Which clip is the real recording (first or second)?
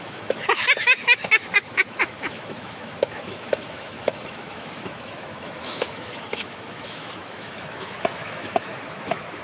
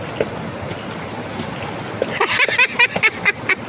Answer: second